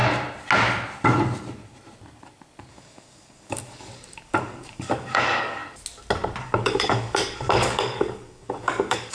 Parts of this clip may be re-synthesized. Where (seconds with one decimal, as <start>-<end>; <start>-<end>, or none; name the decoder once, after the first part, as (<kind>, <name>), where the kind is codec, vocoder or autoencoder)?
2.7-5.6 (codec, DAC); 6.4-9.1